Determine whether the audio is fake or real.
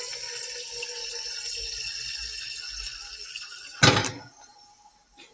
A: real